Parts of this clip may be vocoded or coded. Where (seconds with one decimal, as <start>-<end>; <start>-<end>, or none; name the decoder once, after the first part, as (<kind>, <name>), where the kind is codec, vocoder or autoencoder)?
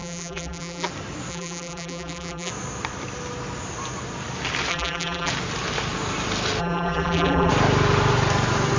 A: 0.0-0.9 (vocoder, BigVGAN v2); 1.3-2.5; 4.7-5.3; 6.6-7.5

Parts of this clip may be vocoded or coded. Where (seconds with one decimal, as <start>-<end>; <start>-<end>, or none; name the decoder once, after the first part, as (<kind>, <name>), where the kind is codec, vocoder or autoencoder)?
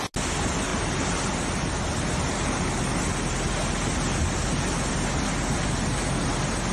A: 0.7-1.3 (vocoder, BigVGAN v2)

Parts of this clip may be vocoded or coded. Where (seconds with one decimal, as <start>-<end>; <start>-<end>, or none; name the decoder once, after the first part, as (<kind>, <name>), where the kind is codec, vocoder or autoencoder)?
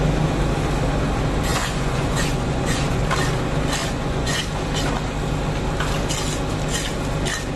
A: 1.5-3.0 (vocoder, Vocos); 3.8-4.4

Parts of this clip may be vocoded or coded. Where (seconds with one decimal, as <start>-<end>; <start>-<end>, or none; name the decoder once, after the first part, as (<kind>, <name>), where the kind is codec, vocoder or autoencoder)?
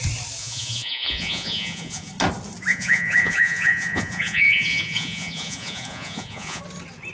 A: 0.4-2.1 (vocoder, Vocos); 2.7-6.6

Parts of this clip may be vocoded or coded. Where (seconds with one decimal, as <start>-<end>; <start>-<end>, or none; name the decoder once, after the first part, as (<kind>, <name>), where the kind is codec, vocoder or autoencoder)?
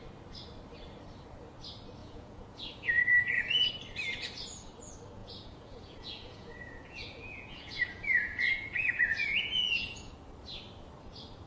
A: 2.0-3.7 (vocoder, Vocos); 5.2-10.1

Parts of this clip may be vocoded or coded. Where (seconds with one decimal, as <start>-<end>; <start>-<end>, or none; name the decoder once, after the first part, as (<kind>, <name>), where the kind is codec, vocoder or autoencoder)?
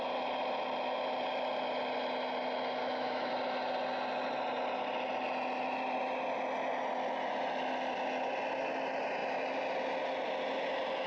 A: 2.8-3.3 (autoencoder, DAC-VAE)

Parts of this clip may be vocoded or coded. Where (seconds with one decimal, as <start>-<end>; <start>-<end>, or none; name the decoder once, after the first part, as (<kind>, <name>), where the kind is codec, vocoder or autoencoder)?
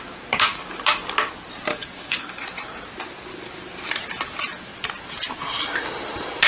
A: 1.7-2.4 (codec, DAC)